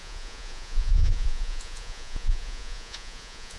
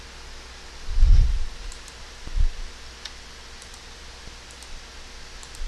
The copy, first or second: first